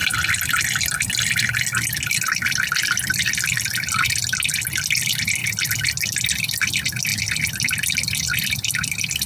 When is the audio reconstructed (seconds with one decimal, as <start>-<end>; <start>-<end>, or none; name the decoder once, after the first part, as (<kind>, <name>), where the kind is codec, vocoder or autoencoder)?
none